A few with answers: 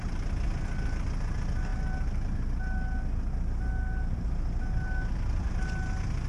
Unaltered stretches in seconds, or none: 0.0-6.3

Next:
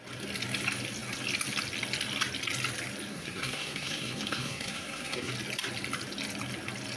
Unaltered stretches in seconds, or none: 0.0-3.1; 5.3-7.0

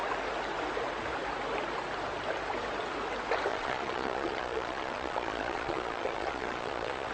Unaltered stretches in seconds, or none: 0.0-3.5